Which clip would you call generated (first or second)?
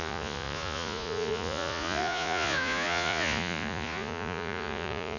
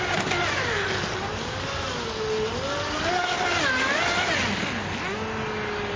first